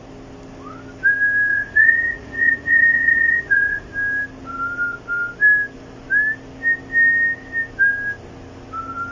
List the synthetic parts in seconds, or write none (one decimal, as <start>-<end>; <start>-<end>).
1.5-3.9

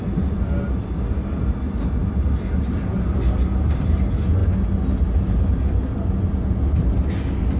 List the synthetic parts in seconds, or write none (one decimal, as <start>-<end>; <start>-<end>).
none

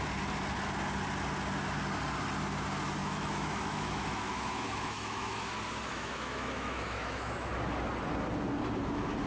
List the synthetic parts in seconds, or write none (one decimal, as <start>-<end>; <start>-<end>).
3.0-5.5; 5.9-7.5

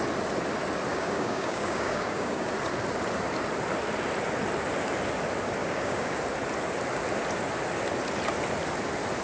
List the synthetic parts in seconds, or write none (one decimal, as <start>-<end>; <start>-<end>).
0.9-2.5; 5.6-6.2